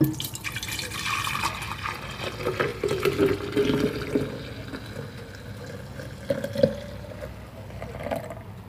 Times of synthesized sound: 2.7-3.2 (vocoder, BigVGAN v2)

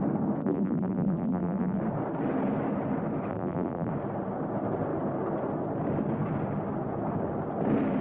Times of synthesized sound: 0.4-1.8 (vocoder, BigVGAN v2); 3.3-3.9

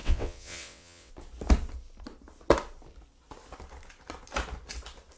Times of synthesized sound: 0.0-1.1 (vocoder, WaveNeXt)

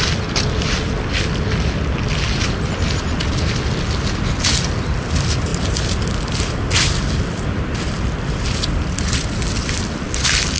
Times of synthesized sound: none

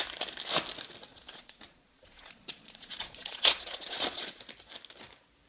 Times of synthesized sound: 1.1-4.4 (vocoder, Vocos)